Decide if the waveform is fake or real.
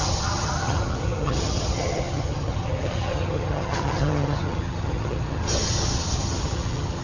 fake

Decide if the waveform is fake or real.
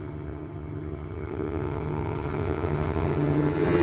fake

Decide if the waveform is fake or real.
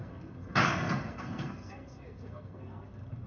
fake